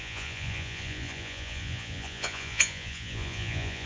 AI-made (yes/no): yes